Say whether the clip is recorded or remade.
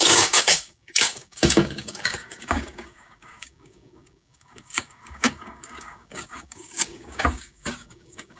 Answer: remade